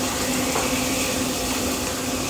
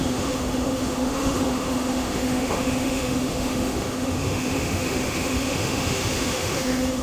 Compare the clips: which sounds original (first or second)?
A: first